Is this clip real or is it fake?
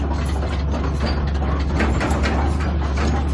real